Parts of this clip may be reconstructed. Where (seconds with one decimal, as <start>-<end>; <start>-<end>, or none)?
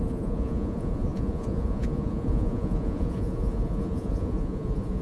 0.0-5.0